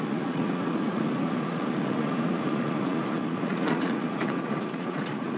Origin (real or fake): fake